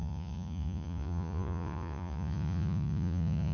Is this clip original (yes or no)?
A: no